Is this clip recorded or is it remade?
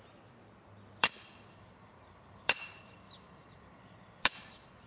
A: remade